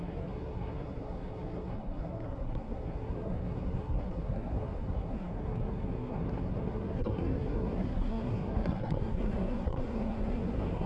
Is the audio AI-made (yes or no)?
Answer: yes